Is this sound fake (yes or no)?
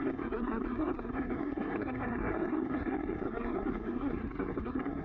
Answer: yes